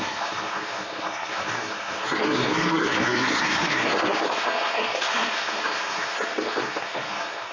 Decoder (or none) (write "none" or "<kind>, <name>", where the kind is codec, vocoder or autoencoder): codec, SNAC